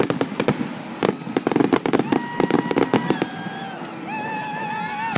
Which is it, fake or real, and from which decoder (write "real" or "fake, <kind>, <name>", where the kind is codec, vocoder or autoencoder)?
real